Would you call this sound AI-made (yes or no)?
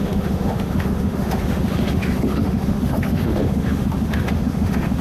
yes